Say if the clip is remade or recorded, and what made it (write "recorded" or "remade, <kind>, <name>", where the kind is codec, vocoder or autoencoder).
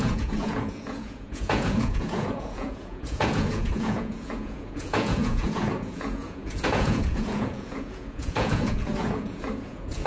remade, vocoder, Vocos